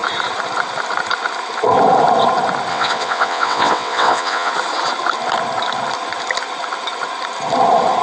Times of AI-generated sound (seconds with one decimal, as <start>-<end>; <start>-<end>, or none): 2.7-4.5